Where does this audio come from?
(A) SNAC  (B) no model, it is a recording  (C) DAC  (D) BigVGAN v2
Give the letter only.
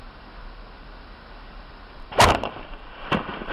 B